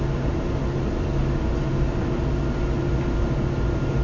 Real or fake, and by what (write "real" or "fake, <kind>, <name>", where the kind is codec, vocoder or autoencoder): real